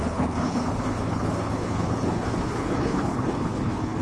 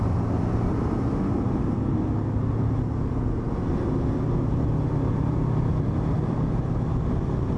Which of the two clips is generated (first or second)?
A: first